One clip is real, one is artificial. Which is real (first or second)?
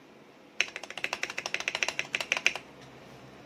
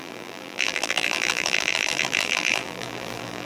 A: first